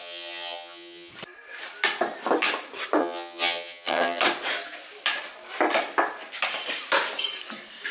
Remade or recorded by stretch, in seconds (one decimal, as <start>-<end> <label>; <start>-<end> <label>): 0.0-1.1 remade; 1.1-3.0 recorded; 3.0-4.2 remade; 4.2-7.9 recorded